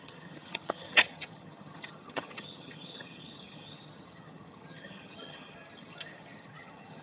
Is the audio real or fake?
fake